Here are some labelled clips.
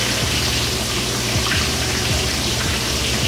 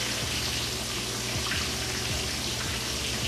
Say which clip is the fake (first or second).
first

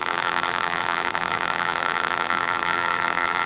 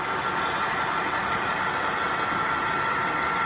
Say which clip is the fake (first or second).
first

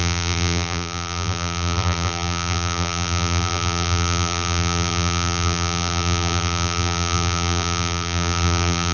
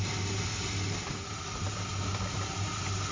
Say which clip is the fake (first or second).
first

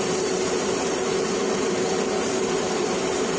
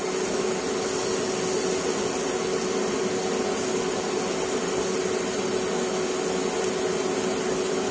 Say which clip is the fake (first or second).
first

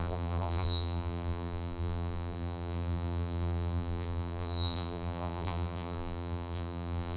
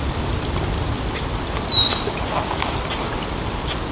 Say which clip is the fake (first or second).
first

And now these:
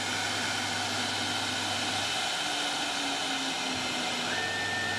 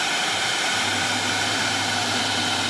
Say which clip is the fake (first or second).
second